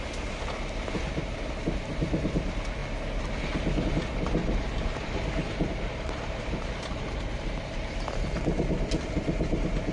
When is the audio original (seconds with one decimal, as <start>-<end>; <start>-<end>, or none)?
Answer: 0.0-4.4; 8.2-9.9